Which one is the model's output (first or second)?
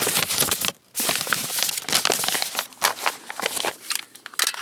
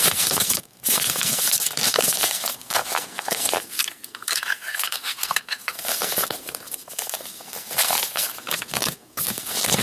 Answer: second